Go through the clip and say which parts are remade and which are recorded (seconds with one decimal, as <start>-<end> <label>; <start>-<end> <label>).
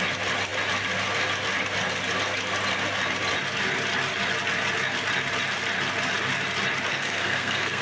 0.0-6.9 recorded; 6.9-7.8 remade